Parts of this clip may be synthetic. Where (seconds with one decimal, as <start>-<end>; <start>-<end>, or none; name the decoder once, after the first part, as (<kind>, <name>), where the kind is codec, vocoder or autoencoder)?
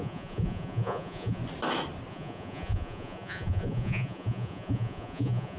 0.0-1.4 (vocoder, Vocos); 2.1-5.6